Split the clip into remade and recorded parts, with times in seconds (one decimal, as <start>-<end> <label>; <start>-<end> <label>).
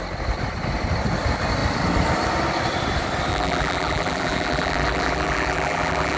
0.0-3.3 recorded; 3.3-6.2 remade